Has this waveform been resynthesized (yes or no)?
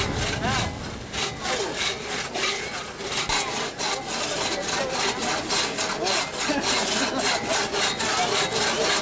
no